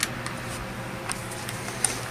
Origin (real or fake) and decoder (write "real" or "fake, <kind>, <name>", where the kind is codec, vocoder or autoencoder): real